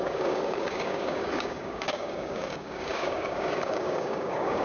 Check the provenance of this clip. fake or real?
fake